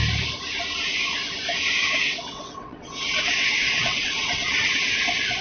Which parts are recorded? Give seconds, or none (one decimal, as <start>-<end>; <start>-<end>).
0.0-1.8; 5.0-5.4